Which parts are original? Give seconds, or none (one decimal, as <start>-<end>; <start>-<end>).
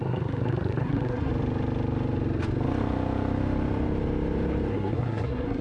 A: 1.3-4.7